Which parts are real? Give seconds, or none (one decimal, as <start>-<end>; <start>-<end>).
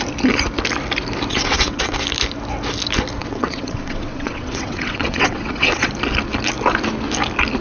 0.0-1.3; 1.9-3.2; 5.9-7.6